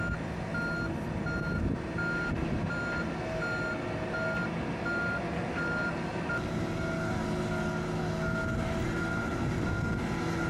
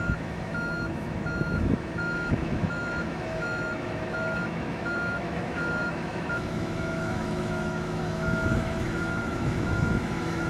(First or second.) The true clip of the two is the first